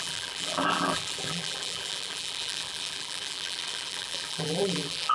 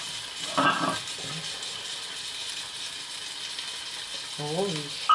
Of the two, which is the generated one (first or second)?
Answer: first